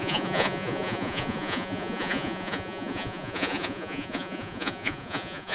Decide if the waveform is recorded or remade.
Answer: remade